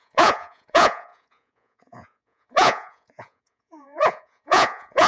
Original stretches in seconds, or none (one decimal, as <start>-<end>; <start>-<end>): none